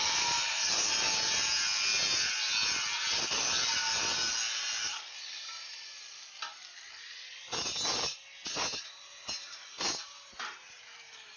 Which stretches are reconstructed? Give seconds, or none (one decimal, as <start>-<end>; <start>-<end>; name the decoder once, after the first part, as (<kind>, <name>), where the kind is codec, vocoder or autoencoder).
9.4-11.4 (vocoder, BigVGAN v2)